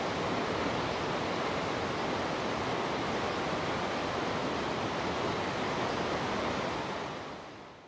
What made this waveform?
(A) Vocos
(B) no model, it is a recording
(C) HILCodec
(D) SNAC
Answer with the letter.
B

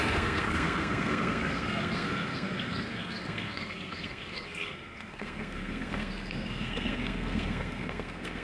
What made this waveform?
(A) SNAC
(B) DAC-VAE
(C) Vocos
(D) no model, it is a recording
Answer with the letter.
A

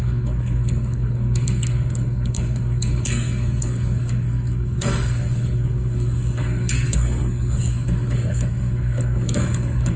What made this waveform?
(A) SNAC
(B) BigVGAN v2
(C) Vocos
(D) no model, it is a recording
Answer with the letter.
A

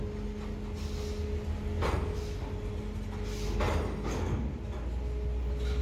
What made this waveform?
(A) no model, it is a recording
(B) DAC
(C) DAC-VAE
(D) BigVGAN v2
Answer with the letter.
A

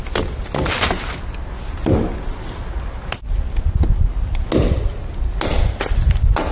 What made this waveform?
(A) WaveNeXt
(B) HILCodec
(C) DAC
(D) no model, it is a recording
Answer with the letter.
D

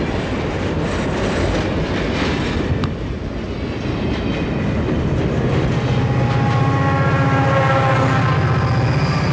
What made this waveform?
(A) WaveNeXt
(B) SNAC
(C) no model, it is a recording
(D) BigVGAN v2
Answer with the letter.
C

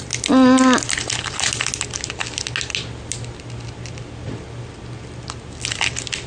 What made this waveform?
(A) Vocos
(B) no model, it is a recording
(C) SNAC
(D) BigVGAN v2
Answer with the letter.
B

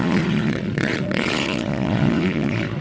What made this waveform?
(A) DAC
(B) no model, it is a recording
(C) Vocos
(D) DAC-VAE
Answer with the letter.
C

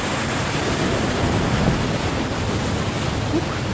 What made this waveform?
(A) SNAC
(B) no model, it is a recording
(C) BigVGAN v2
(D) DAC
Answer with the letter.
B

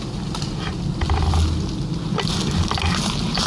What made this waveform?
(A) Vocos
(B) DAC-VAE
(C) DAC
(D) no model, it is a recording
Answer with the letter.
D